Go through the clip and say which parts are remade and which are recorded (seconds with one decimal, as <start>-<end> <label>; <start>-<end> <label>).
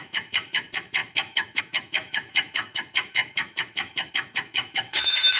0.0-5.4 remade